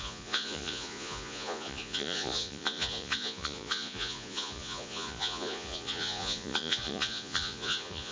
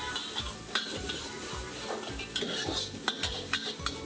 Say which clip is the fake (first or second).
first